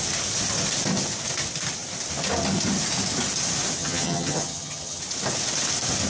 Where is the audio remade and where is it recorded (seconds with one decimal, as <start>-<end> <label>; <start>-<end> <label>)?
0.0-3.8 recorded; 3.8-5.0 remade; 5.0-6.1 recorded